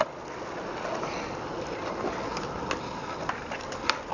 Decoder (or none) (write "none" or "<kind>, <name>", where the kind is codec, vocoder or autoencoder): none